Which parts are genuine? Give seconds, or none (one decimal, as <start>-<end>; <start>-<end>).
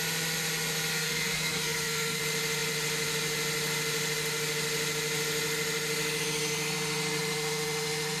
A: 0.0-0.9; 2.2-8.2